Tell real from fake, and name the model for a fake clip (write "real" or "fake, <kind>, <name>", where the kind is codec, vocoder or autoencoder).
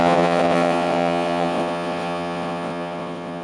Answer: fake, vocoder, WaveNeXt